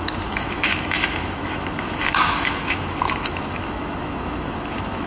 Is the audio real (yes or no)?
no